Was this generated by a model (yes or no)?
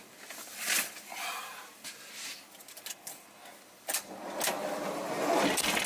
no